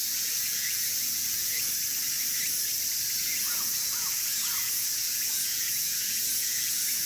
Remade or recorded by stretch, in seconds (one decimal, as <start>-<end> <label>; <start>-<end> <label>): 0.0-1.7 remade; 1.7-3.2 recorded; 3.2-7.1 remade